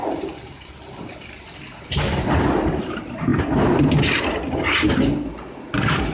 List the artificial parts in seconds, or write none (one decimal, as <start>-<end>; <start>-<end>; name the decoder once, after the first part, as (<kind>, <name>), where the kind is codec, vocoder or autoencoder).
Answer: none